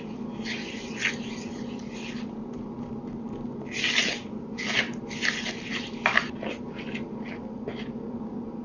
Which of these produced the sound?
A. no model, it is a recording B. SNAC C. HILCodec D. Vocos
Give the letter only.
A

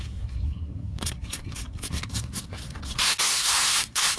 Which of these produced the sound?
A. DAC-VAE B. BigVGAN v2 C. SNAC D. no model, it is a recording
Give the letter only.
C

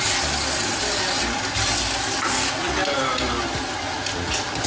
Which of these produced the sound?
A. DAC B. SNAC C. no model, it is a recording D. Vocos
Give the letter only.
C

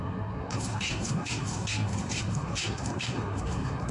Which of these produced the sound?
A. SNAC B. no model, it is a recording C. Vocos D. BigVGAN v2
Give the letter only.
A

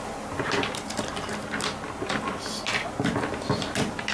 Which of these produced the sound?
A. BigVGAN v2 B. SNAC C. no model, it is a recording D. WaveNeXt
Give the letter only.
C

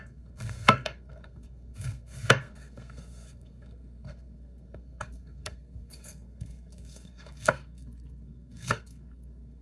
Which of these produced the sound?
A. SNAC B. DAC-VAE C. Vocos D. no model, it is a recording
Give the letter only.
A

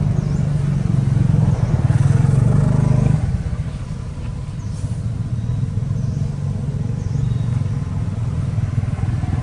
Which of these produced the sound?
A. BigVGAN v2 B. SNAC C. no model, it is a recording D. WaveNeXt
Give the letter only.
C